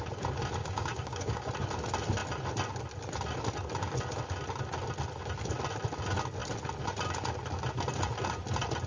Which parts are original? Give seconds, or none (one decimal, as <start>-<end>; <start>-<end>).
0.0-0.6; 1.5-8.9